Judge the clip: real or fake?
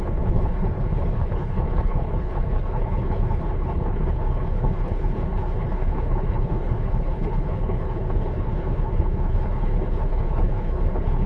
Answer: fake